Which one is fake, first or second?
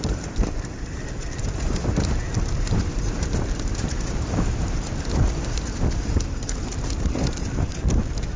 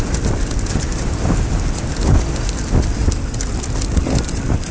first